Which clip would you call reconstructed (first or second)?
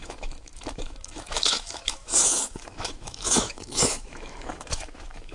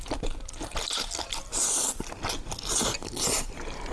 first